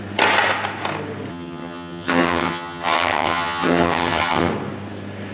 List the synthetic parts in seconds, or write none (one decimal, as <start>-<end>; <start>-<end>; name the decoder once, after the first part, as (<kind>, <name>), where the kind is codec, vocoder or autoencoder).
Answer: 1.3-4.5 (vocoder, HiFi-GAN)